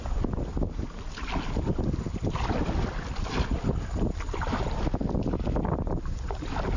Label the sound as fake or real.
real